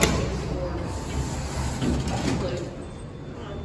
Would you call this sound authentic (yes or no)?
yes